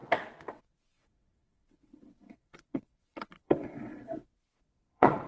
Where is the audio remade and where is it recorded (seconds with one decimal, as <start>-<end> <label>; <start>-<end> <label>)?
0.0-0.5 recorded; 0.5-5.3 remade